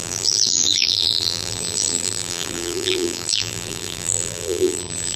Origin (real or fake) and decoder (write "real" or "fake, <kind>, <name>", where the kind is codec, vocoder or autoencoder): fake, vocoder, BigVGAN v2